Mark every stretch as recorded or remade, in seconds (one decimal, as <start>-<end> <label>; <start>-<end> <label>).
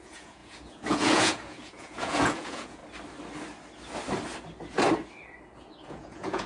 0.0-2.8 remade; 2.8-5.8 recorded; 5.8-6.5 remade